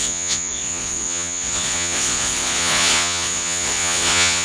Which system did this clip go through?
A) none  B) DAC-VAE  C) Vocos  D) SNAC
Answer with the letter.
C